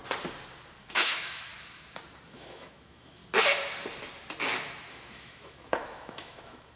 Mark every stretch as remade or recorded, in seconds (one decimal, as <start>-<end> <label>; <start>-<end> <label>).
0.0-0.8 recorded; 0.8-1.5 remade; 1.5-2.3 recorded; 2.3-3.2 remade; 3.2-4.9 recorded; 4.9-6.8 remade